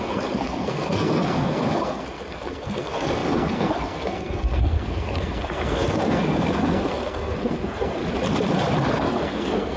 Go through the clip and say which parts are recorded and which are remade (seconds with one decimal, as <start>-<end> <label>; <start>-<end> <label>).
0.0-8.0 remade; 8.0-8.9 recorded; 8.9-9.8 remade